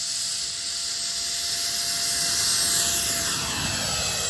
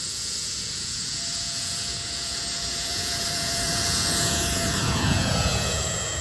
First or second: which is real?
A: first